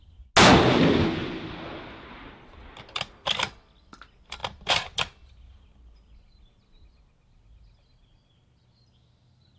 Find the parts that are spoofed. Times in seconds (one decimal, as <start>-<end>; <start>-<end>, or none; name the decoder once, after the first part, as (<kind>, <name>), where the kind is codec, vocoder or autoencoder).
none